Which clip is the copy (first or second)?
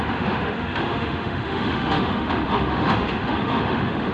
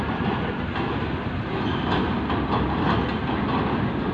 first